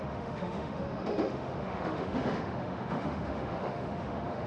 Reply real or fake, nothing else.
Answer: fake